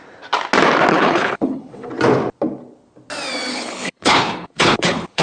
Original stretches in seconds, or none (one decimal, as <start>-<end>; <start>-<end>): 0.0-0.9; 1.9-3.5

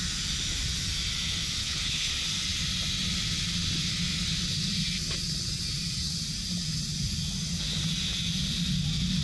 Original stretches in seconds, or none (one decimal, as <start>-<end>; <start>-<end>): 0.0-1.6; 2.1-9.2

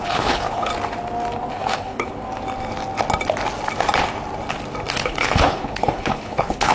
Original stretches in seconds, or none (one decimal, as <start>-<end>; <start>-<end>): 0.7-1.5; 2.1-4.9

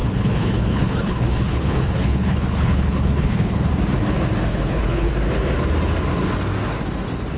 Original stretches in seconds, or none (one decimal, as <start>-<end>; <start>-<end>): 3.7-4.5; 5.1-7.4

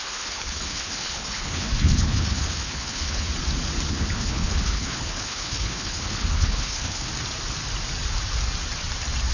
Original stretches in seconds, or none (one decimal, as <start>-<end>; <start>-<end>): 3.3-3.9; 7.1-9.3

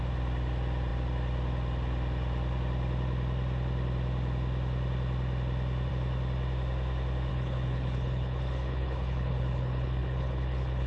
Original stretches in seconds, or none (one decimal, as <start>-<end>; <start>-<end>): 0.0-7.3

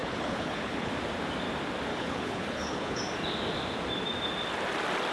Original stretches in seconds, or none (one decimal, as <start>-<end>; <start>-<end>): 0.9-1.9; 3.0-5.1